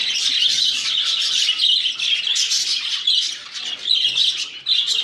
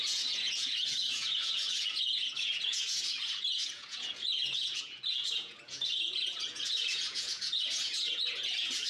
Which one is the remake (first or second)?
second